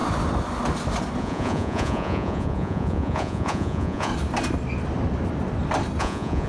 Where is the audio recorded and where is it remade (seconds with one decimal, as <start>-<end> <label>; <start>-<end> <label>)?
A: 0.0-1.2 recorded; 1.2-4.1 remade; 4.1-6.0 recorded; 6.0-6.5 remade